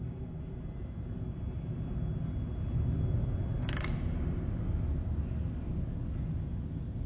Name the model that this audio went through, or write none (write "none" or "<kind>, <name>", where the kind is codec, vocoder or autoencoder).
none